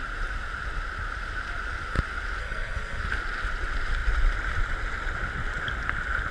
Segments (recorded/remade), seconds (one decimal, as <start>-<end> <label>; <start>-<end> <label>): 0.0-2.4 recorded; 2.4-3.0 remade; 3.0-6.3 recorded